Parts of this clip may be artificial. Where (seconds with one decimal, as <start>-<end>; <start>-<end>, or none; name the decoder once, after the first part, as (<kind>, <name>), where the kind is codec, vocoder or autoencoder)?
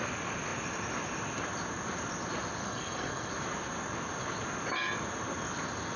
2.6-3.3 (codec, SNAC)